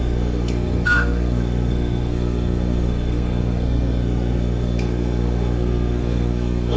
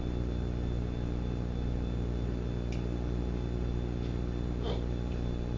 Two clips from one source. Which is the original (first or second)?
second